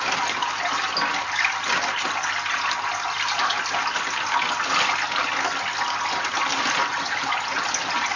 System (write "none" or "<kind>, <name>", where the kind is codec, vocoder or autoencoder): none